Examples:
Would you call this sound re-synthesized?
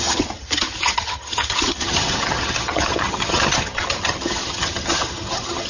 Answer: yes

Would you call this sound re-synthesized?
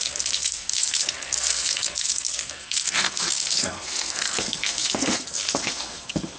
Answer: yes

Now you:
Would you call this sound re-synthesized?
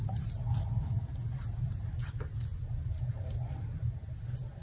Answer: no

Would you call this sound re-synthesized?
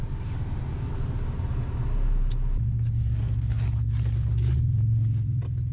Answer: no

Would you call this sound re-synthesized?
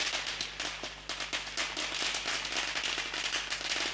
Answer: no